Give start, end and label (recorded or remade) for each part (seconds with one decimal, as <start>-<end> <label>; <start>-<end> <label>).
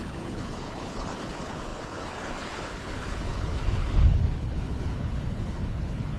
0.0-6.2 remade